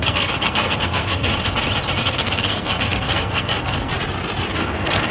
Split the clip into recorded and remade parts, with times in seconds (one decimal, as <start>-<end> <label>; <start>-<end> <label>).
0.0-1.3 remade; 1.3-2.0 recorded; 2.0-3.9 remade; 3.9-4.6 recorded; 4.6-5.1 remade